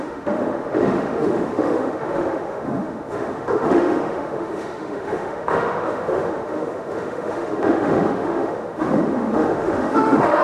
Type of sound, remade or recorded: remade